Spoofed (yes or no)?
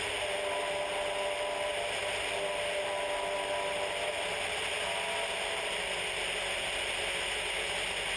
no